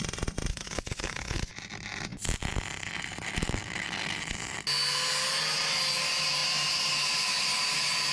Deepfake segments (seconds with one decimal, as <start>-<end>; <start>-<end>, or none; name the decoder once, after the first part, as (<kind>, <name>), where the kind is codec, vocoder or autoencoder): 0.5-1.5 (codec, HILCodec)